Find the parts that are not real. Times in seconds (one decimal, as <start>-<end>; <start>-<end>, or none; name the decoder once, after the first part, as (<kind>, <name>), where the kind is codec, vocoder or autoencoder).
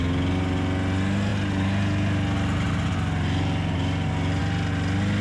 none